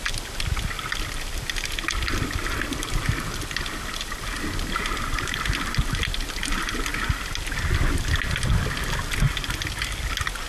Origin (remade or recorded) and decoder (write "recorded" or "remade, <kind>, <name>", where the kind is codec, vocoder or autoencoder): recorded